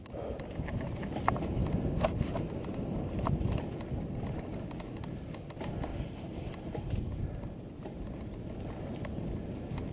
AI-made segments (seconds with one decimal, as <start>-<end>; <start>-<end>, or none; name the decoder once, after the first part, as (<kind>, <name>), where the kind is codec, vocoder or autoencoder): none

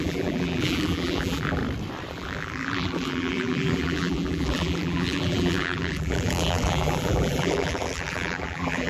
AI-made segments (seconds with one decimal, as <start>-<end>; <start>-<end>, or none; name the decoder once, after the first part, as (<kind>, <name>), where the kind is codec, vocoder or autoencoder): 0.0-1.6 (vocoder, BigVGAN v2); 2.1-8.9

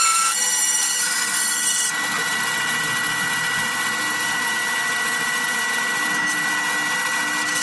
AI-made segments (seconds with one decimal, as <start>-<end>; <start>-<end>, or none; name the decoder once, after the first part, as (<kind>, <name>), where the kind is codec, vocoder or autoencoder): none

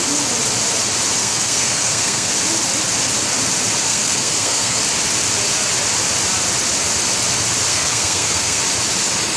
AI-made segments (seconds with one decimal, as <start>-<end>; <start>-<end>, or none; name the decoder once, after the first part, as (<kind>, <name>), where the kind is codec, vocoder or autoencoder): 1.2-2.3 (codec, SNAC); 3.9-4.8; 7.7-8.6

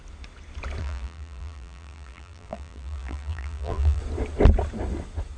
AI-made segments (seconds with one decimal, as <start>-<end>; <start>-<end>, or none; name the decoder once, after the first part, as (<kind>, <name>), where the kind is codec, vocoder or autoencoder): 0.8-4.0 (vocoder, BigVGAN v2)